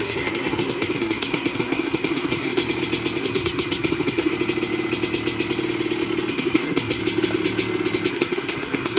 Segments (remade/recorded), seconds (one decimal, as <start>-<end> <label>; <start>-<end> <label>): 0.0-2.6 remade; 2.6-3.2 recorded; 3.2-4.3 remade; 4.3-6.3 recorded; 6.3-7.0 remade; 7.0-8.1 recorded; 8.1-9.0 remade